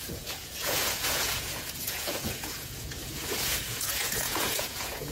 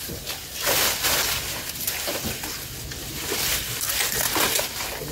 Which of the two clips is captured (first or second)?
second